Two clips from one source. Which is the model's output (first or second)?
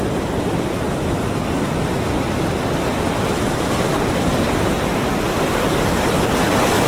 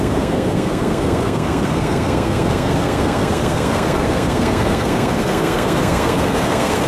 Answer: second